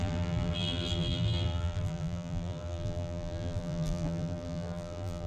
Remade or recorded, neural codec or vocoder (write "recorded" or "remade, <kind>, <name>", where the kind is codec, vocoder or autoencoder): remade, vocoder, BigVGAN v2